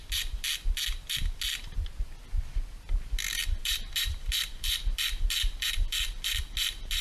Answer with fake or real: real